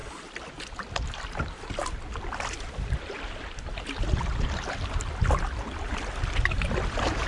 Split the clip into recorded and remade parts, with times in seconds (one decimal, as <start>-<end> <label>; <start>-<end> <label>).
0.0-7.3 recorded